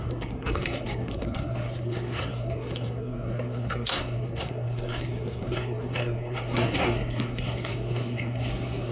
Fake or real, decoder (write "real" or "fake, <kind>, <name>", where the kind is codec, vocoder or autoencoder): fake, codec, SNAC